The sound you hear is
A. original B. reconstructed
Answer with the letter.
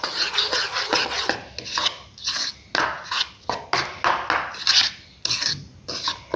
A